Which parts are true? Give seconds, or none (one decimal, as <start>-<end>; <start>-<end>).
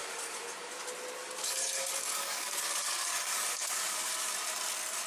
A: 0.7-1.2; 4.3-5.1